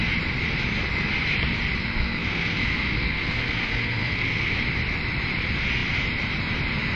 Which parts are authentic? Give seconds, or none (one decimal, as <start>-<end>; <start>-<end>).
0.0-1.8; 4.6-7.0